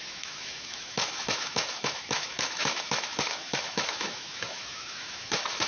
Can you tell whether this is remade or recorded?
remade